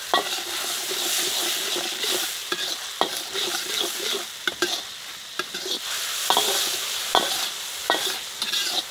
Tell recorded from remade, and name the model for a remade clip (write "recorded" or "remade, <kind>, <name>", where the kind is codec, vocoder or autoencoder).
recorded